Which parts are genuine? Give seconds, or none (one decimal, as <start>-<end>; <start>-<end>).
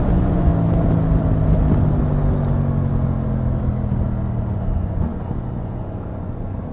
0.5-4.5